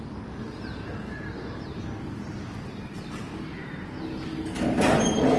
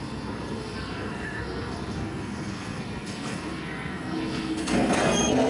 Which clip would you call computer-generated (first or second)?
second